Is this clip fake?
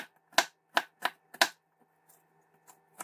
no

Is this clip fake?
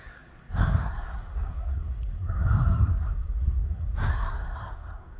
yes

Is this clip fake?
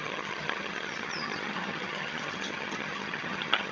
yes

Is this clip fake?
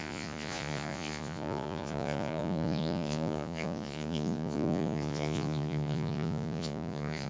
yes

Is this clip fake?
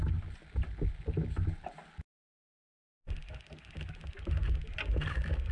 no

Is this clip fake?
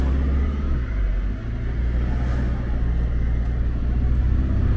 no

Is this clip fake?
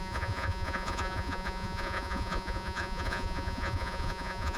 yes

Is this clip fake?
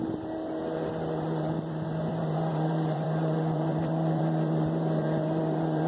yes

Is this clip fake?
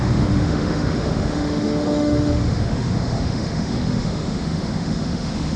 yes